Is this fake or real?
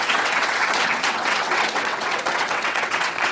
fake